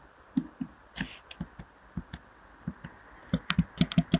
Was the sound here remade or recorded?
recorded